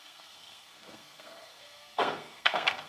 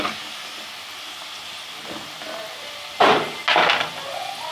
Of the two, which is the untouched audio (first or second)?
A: second